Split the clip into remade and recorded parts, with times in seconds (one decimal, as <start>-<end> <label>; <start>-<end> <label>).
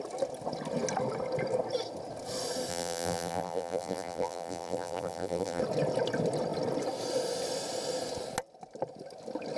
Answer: 0.0-2.7 recorded; 2.7-5.6 remade; 5.6-9.6 recorded